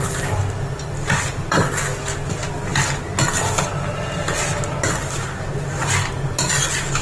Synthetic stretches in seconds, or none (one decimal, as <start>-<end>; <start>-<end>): none